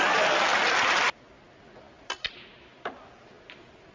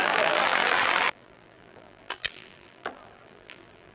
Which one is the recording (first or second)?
first